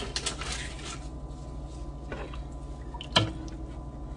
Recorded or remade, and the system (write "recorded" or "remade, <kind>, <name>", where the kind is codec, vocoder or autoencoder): recorded